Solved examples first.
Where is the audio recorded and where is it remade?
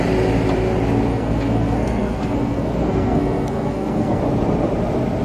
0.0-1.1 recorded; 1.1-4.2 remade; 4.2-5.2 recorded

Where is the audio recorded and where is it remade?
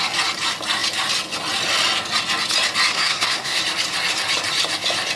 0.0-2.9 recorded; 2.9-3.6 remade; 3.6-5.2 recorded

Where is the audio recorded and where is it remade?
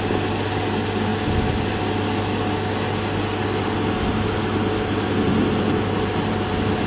0.0-6.9 recorded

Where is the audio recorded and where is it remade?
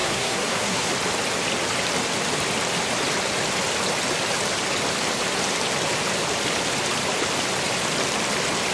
0.0-0.9 remade; 0.9-8.7 recorded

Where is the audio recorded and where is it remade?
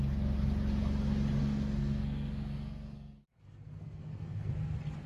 0.0-1.4 recorded; 1.4-4.5 remade; 4.5-5.1 recorded